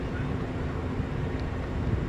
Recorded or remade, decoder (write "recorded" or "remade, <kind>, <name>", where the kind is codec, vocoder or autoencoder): recorded